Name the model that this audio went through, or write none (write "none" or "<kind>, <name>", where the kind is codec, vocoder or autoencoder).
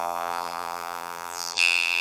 vocoder, BigVGAN v2